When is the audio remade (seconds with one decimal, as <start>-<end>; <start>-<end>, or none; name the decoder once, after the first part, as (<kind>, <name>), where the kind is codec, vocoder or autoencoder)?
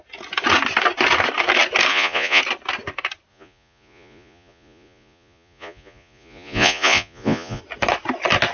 1.9-2.4 (vocoder, Vocos); 3.3-7.6